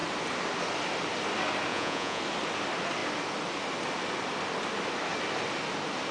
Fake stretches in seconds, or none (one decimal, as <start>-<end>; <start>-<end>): 1.7-2.2